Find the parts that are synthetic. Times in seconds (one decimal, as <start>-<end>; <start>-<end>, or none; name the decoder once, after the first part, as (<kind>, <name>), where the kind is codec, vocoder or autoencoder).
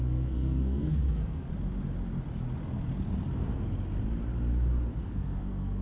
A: 0.0-1.5 (codec, SNAC); 5.0-5.8